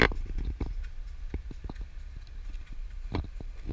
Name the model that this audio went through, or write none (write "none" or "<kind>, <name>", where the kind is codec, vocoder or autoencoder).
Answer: none